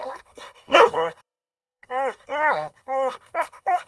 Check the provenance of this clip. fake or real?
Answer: fake